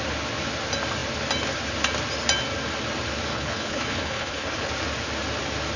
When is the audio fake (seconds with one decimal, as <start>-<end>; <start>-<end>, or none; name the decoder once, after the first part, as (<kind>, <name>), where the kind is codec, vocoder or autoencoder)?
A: 3.3-4.7 (codec, HILCodec)